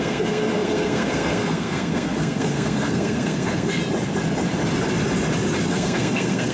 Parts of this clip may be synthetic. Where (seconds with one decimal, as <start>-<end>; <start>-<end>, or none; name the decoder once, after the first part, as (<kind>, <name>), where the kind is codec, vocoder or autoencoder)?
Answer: 0.0-3.8 (codec, SNAC); 5.7-6.5

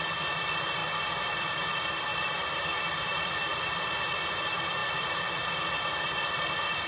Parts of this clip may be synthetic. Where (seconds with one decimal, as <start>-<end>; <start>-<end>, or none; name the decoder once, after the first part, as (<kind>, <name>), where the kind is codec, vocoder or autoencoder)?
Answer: 0.0-0.8 (vocoder, BigVGAN v2); 1.3-6.9

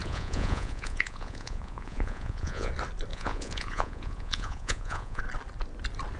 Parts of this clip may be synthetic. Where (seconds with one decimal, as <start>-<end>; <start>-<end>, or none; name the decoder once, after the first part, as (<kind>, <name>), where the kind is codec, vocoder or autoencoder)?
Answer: 0.0-2.7 (vocoder, Vocos); 3.1-5.2